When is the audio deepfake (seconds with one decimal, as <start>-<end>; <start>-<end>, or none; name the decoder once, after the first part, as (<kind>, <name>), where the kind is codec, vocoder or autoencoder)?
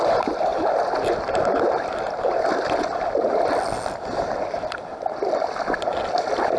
none